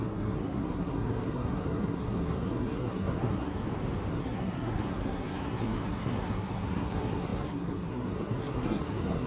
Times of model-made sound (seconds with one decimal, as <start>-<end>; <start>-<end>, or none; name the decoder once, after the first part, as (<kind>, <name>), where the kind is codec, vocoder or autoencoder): 0.0-3.6 (codec, SNAC); 4.1-9.3